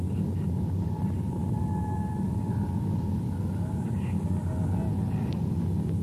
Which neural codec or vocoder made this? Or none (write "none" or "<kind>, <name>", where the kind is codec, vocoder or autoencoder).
none